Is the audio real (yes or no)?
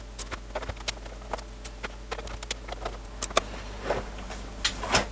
yes